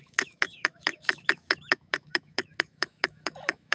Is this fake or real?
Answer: fake